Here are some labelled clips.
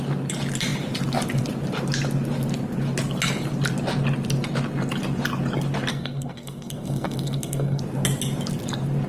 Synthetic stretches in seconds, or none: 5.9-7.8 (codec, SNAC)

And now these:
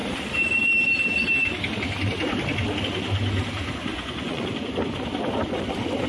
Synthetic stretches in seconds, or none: 3.9-4.5 (vocoder, Vocos)